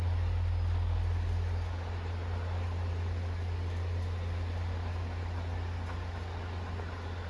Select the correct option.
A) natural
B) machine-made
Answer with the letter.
A